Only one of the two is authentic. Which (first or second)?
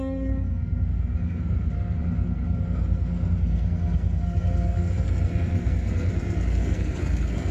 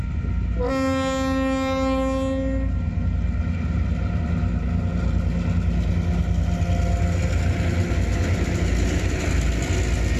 second